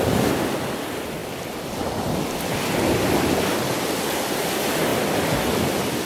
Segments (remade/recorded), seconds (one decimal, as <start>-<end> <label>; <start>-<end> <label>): 0.0-6.1 recorded